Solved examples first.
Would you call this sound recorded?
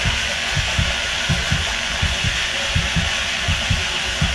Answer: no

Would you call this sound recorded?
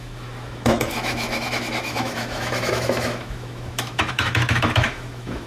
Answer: no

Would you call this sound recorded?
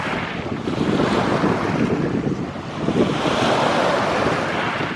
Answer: yes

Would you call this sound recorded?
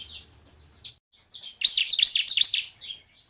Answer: yes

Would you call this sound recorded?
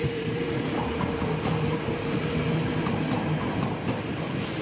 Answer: no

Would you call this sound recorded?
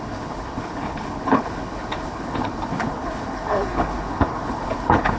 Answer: no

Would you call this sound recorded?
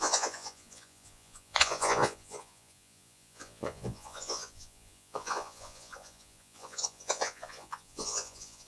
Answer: no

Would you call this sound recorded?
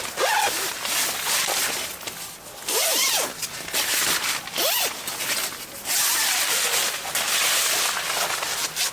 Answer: yes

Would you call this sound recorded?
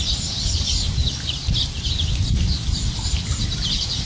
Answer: yes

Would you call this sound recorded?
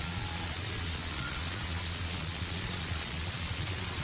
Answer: no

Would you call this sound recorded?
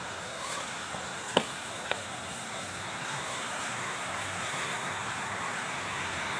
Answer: no